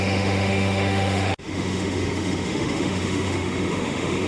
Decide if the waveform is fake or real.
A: fake